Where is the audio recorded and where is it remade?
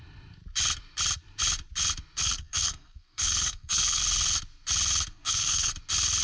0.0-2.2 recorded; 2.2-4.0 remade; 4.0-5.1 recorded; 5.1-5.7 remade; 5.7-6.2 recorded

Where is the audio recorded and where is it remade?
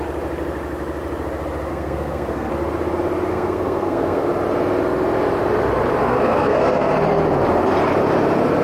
0.0-1.7 recorded; 1.7-2.5 remade; 2.5-3.3 recorded; 3.3-4.3 remade; 4.3-6.0 recorded; 6.0-6.9 remade; 6.9-8.6 recorded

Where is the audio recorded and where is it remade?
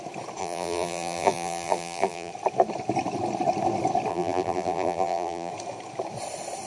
0.0-0.4 recorded; 0.4-2.3 remade; 2.3-4.1 recorded; 4.1-5.5 remade; 5.5-6.7 recorded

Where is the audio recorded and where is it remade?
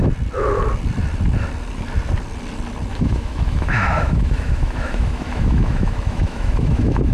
0.0-2.9 recorded; 2.9-7.1 remade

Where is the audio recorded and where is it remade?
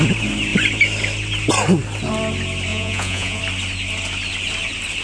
0.0-2.7 recorded; 2.7-3.4 remade; 3.4-5.0 recorded